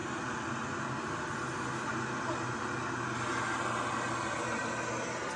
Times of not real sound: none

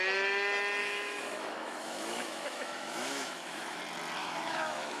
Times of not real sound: 0.8-3.8 (autoencoder, DAC-VAE); 4.2-5.0

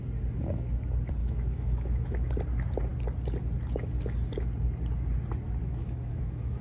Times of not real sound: 1.2-2.3 (autoencoder, DAC-VAE); 5.6-6.6

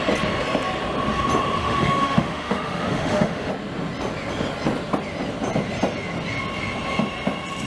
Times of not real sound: 1.6-3.5 (autoencoder, DAC-VAE)